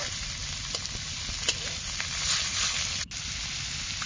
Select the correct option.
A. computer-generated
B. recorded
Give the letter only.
B